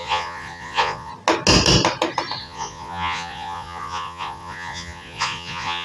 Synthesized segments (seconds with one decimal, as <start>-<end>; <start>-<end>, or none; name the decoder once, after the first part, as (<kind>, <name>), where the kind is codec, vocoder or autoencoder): 0.0-1.1 (vocoder, Vocos); 2.4-5.8